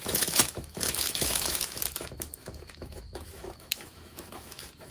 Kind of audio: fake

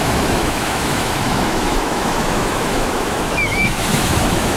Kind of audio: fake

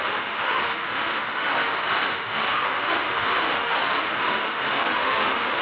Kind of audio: fake